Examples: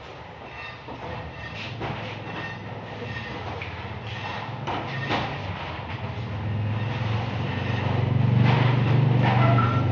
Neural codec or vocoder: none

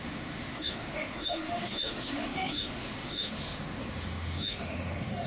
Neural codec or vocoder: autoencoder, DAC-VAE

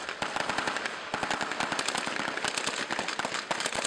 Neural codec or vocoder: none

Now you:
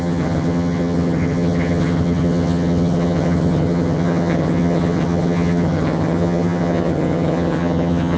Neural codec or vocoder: vocoder, HiFi-GAN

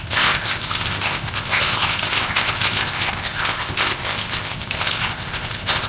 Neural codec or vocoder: codec, ZipCodec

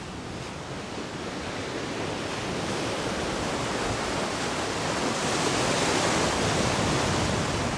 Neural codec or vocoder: none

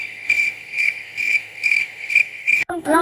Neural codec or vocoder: codec, SNAC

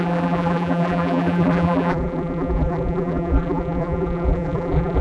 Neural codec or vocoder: vocoder, BigVGAN v2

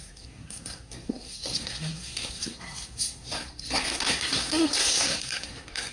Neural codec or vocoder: codec, SNAC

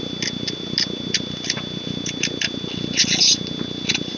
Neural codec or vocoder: none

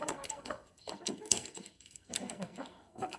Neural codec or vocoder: codec, SNAC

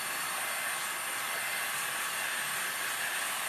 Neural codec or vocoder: none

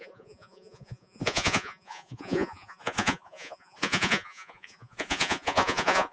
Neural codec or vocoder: vocoder, Vocos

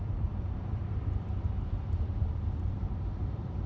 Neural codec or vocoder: vocoder, BigVGAN v2